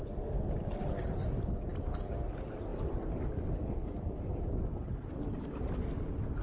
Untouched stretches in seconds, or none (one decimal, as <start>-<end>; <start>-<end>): 0.0-6.4

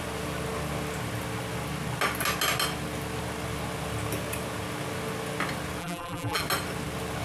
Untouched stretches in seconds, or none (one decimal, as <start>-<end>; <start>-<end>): 0.0-5.8; 6.4-7.2

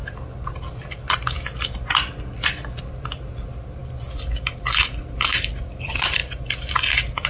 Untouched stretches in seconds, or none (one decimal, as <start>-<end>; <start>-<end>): 0.0-7.3

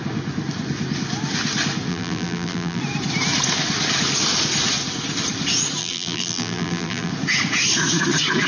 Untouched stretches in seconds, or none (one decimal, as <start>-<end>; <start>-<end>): 0.0-1.9; 2.8-5.8; 7.1-8.5

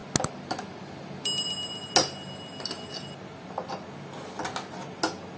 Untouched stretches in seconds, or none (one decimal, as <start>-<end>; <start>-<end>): 0.0-5.4

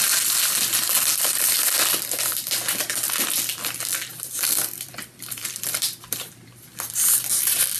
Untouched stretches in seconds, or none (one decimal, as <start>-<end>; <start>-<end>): 0.0-4.1